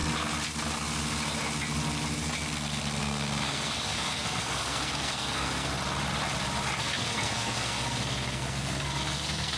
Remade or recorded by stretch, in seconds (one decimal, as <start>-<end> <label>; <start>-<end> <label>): 0.0-3.0 recorded; 3.0-5.7 remade; 5.7-6.8 recorded; 6.8-9.6 remade

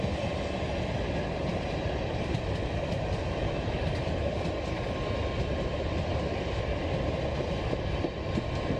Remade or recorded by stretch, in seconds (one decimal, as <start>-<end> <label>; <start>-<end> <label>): 0.0-3.2 recorded; 3.2-3.8 remade; 3.8-8.8 recorded

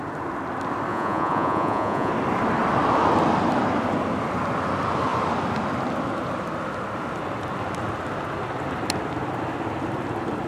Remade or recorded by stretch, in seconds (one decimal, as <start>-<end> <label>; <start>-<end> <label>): 0.0-0.9 recorded; 0.9-2.1 remade; 2.1-10.5 recorded

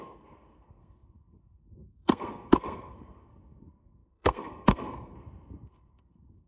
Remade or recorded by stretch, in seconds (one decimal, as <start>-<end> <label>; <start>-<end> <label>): 0.0-6.5 remade

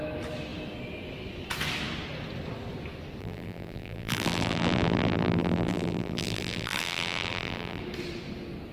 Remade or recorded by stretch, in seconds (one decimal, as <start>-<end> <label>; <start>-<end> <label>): 0.0-3.2 recorded; 3.2-7.8 remade; 7.8-8.7 recorded

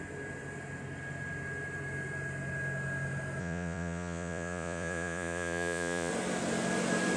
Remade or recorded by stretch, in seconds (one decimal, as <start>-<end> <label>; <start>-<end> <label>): 0.0-3.4 recorded; 3.4-6.1 remade; 6.1-7.2 recorded

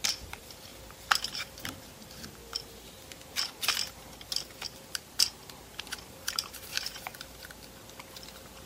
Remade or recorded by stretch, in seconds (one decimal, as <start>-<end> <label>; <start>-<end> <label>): 0.0-0.7 remade; 0.7-1.3 recorded; 1.3-2.4 remade; 2.4-5.8 recorded; 5.8-7.1 remade; 7.1-8.7 recorded